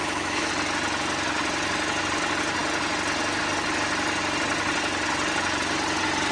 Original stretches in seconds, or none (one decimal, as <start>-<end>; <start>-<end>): 0.5-6.3